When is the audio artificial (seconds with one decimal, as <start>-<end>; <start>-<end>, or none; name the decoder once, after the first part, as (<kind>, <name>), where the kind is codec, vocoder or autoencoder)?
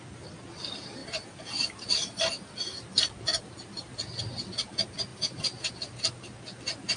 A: 1.0-2.8 (vocoder, BigVGAN v2); 3.3-4.2; 5.1-5.7